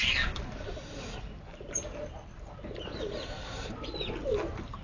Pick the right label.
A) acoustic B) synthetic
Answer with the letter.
A